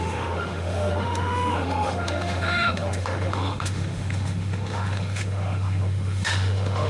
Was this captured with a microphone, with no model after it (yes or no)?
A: no